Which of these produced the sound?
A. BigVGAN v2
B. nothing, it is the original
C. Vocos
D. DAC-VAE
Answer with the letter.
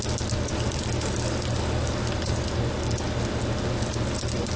B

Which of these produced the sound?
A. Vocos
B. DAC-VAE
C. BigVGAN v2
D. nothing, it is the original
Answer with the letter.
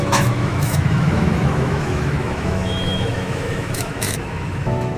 B